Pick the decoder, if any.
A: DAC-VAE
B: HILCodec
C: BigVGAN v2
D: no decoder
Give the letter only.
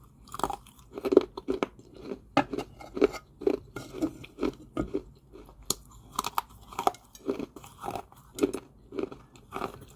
D